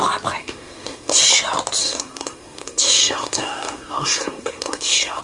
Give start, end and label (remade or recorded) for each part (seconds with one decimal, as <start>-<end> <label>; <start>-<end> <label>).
0.0-0.4 recorded; 0.4-1.2 remade; 1.2-1.8 recorded; 1.8-5.2 remade